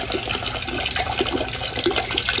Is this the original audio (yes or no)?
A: yes